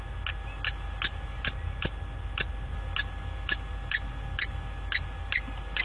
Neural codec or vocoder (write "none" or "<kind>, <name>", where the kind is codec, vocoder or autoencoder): none